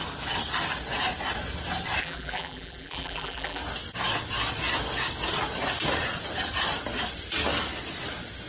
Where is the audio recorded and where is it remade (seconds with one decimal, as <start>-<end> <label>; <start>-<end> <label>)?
0.0-2.0 recorded; 2.0-3.6 remade; 3.6-8.5 recorded